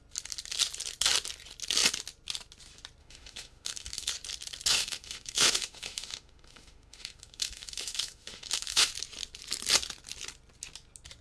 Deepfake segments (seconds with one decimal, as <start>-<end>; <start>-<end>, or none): 3.0-4.1; 4.7-8.9